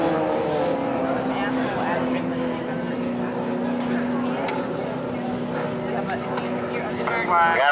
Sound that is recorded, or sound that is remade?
recorded